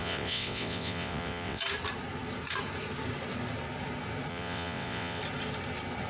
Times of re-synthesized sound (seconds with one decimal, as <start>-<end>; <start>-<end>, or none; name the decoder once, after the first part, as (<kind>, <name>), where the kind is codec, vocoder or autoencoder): 0.0-1.6 (vocoder, WaveNeXt); 4.3-5.2